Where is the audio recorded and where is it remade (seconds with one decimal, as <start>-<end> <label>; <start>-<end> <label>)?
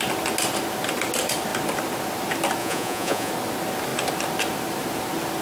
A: 0.0-2.6 recorded; 2.6-3.3 remade; 3.3-5.4 recorded